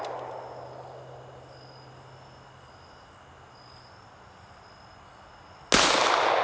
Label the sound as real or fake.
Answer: real